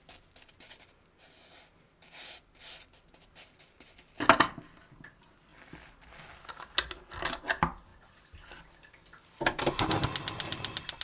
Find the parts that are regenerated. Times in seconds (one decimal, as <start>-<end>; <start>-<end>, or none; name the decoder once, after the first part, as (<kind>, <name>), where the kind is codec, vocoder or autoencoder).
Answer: none